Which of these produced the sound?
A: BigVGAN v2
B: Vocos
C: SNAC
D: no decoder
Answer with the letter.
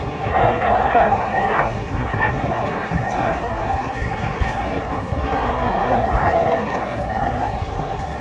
C